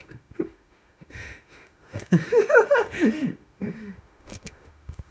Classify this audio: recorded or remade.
remade